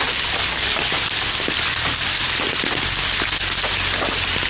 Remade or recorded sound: recorded